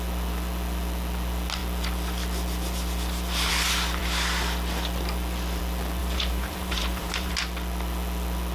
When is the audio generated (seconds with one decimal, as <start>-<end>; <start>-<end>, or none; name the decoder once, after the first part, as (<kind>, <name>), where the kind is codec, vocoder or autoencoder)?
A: 6.0-7.3 (vocoder, BigVGAN v2)